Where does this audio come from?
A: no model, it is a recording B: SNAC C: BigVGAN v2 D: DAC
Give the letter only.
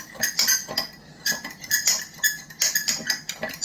A